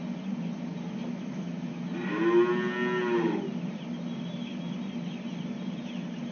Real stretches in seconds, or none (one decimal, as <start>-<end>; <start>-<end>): 0.0-6.3